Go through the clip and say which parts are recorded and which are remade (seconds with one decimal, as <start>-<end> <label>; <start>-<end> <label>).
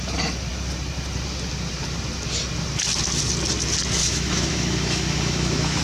0.0-4.0 recorded; 4.0-5.8 remade